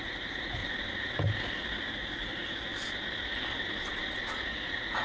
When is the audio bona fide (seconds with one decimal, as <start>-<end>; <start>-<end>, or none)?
0.6-1.9; 2.7-4.5